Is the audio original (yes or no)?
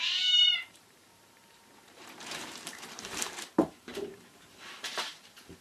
no